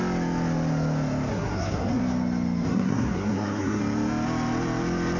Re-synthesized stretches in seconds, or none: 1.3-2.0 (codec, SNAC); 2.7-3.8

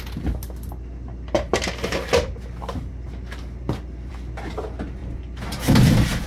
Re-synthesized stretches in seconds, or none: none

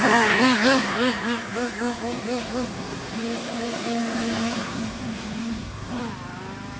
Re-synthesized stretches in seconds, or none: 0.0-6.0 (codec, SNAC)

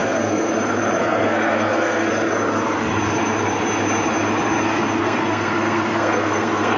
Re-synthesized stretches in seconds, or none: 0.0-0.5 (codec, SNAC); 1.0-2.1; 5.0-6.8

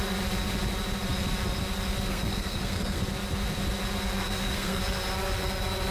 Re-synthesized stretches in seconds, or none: 2.1-3.0 (codec, SNAC); 4.2-4.8